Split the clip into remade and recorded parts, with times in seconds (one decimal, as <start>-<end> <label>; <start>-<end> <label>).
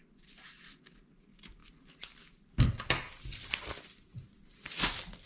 0.0-5.3 recorded